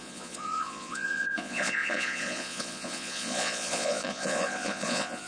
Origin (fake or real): fake